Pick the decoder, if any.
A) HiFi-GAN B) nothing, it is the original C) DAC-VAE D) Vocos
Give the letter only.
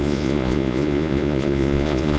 D